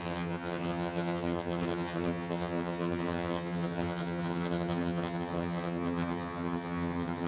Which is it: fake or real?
fake